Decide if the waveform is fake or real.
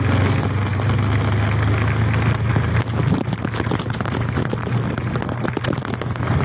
real